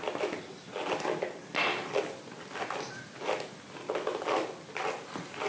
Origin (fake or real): real